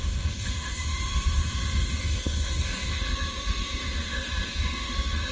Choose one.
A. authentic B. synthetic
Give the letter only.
B